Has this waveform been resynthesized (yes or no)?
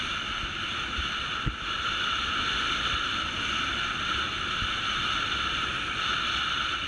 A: no